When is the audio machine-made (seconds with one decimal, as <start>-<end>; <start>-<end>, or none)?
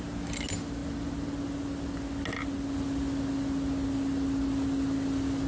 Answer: none